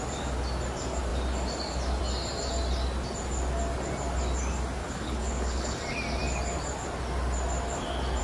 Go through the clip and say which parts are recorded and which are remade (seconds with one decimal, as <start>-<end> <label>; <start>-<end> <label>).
0.0-4.8 recorded; 4.8-5.8 remade; 5.8-8.2 recorded